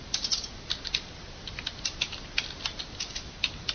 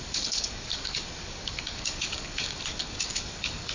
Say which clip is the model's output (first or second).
second